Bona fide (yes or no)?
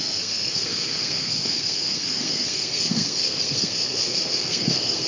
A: no